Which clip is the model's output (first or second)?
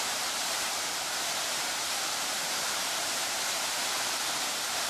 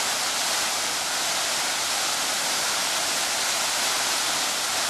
first